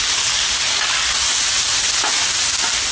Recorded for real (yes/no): yes